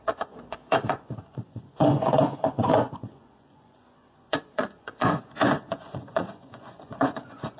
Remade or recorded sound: remade